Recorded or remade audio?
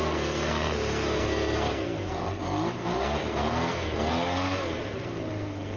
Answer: remade